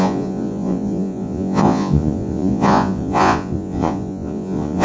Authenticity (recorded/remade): remade